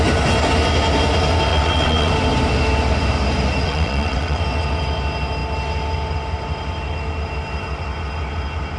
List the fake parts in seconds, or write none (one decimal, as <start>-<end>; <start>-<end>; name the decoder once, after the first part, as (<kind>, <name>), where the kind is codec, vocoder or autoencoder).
1.5-2.1 (vocoder, WaveNeXt); 3.6-4.4